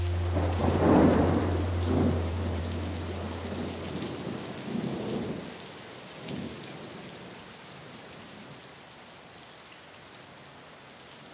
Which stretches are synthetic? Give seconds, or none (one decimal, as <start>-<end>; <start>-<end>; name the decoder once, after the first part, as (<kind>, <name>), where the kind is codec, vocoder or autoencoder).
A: 0.6-2.6 (vocoder, BigVGAN v2)